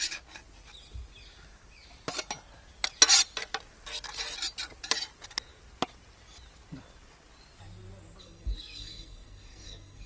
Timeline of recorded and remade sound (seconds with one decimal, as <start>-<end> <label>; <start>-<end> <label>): 0.0-8.2 recorded; 8.2-10.1 remade